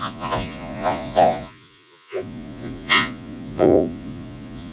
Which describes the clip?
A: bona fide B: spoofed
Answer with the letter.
B